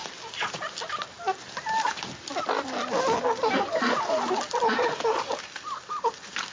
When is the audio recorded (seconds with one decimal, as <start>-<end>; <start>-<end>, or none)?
0.0-6.5